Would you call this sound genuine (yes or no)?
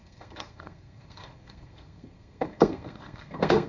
no